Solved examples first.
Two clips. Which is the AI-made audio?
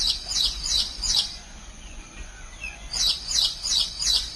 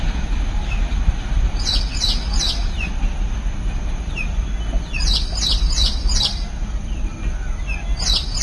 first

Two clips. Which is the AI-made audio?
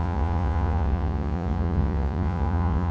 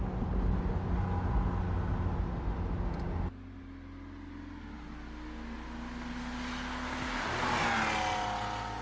first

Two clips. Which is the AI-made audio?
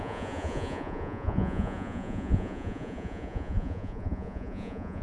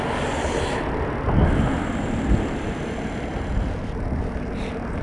first